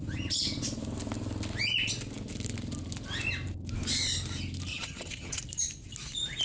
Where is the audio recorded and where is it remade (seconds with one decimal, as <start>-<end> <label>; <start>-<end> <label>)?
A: 0.0-4.7 recorded; 4.7-5.4 remade; 5.4-6.4 recorded